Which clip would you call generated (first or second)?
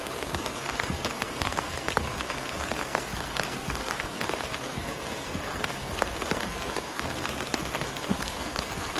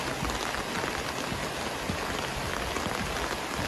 first